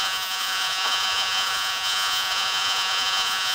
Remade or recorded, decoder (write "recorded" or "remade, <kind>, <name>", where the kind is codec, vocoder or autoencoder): remade, vocoder, Vocos